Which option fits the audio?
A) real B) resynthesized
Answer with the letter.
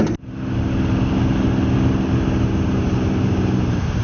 A